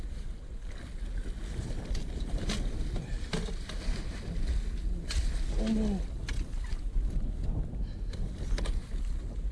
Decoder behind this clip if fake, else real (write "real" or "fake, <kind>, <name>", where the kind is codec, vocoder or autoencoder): real